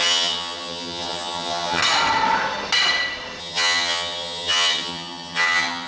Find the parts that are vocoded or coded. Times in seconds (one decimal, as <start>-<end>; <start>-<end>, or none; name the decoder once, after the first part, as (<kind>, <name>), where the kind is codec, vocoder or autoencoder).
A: 0.0-1.8 (vocoder, HiFi-GAN); 3.4-5.9